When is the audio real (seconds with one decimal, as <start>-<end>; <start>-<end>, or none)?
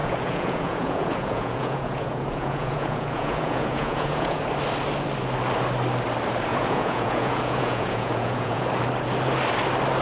4.4-6.5; 8.7-10.0